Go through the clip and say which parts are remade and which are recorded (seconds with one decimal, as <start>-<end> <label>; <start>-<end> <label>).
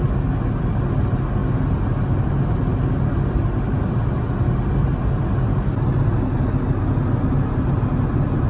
0.0-8.5 recorded